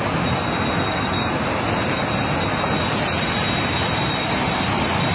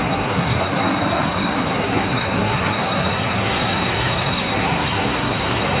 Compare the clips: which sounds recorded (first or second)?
first